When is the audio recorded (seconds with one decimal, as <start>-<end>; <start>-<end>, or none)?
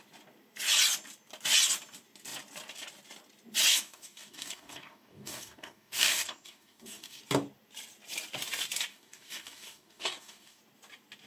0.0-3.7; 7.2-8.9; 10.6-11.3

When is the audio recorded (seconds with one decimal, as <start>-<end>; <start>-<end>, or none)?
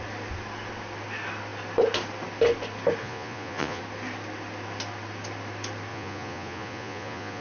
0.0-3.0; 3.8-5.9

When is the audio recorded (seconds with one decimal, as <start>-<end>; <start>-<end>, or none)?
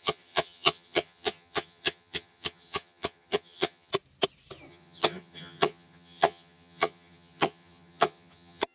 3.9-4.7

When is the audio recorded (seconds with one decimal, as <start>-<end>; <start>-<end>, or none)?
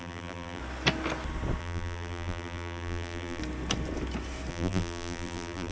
0.6-1.6; 3.4-4.5